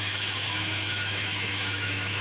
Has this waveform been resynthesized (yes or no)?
yes